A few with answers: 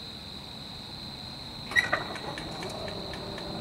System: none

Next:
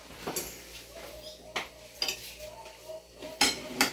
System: none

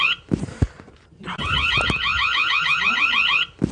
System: vocoder, BigVGAN v2